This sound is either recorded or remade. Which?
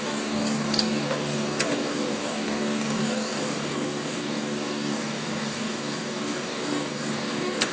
remade